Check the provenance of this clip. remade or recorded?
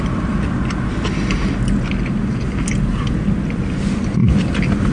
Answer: recorded